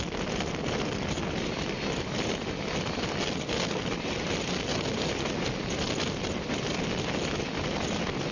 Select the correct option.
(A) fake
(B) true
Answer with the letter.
B